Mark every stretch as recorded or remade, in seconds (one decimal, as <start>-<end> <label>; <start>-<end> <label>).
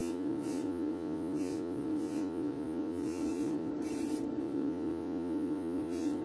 0.0-3.7 remade; 3.7-4.4 recorded; 4.4-6.2 remade